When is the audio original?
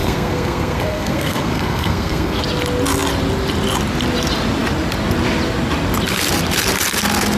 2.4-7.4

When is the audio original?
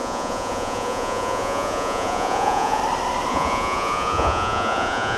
2.8-3.3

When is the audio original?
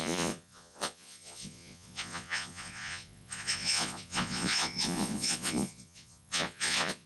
none